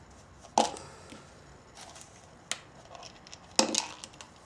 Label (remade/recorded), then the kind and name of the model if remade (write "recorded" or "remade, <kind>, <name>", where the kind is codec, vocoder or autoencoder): recorded